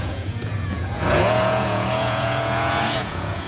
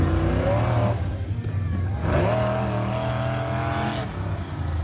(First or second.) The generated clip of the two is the first